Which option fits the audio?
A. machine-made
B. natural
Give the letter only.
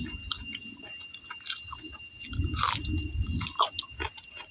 B